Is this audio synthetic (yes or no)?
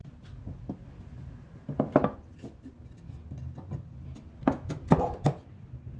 no